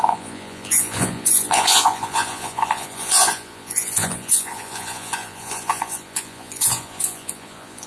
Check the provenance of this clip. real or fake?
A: fake